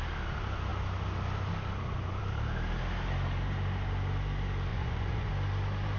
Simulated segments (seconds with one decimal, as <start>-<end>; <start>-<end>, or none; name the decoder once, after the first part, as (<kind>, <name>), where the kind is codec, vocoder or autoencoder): 4.7-5.3 (vocoder, Vocos)

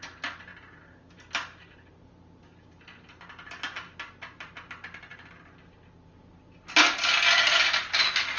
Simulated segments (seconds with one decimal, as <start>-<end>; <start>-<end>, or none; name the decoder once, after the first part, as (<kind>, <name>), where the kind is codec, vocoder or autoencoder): none

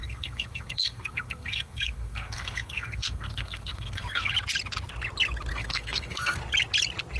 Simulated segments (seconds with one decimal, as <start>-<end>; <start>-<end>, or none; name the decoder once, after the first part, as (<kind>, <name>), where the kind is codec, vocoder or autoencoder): 0.0-4.3 (codec, SNAC); 5.5-6.4

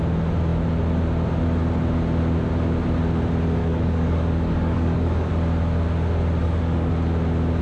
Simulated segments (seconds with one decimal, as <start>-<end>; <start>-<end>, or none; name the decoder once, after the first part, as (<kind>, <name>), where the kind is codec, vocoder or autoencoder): 3.6-5.3 (codec, DAC); 6.4-6.9

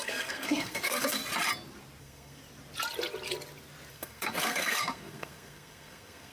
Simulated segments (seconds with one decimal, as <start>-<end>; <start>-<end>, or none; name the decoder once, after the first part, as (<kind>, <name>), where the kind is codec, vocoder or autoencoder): 0.0-1.2 (codec, SNAC); 2.0-2.4; 3.9-6.3